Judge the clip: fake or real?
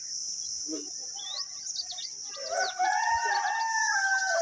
real